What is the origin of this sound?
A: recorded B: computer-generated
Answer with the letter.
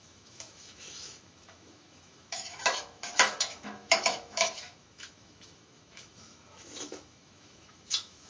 B